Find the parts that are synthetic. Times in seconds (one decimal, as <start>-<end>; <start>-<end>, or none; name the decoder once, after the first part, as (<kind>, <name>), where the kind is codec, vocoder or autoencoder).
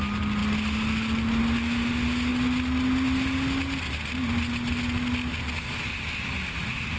none